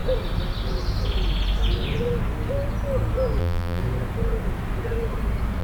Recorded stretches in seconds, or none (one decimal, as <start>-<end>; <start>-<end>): 0.0-3.4; 3.8-5.6